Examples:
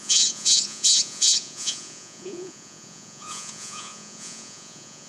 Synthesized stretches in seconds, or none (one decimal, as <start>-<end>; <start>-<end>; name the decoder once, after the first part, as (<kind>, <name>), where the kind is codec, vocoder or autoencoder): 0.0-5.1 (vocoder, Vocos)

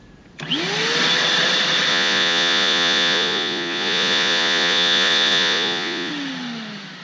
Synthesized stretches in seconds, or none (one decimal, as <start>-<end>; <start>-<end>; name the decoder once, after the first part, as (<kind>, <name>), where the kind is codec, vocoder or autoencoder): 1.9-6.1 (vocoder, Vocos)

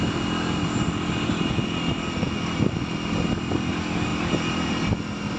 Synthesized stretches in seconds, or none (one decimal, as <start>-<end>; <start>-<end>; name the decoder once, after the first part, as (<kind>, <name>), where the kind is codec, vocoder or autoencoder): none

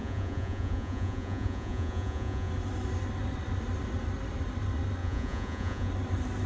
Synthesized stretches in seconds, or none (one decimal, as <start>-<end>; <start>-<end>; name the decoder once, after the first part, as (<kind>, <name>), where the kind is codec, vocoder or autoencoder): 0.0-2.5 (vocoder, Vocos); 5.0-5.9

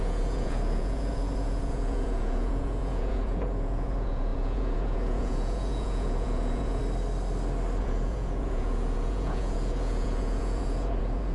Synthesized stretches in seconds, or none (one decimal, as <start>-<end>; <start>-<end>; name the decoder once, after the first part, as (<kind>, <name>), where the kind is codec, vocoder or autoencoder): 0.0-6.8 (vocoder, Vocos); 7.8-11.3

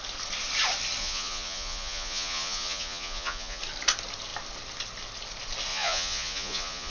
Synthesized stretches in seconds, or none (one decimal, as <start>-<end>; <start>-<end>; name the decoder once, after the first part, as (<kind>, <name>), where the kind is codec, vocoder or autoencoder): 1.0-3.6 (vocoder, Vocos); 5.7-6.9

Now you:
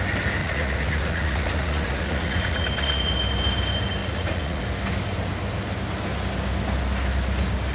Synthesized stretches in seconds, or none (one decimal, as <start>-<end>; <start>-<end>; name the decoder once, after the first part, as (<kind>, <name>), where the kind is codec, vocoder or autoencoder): 0.4-3.1 (vocoder, Vocos); 4.0-4.6

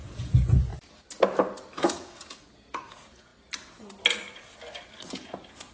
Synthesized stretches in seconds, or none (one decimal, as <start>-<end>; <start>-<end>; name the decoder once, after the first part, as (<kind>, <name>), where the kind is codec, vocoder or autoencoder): 0.0-0.7 (vocoder, Vocos); 1.9-3.3; 5.1-5.7